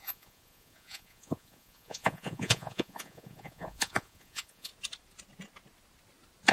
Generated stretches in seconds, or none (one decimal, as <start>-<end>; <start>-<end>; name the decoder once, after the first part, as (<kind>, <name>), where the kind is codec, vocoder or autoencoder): 0.0-4.7 (vocoder, Vocos)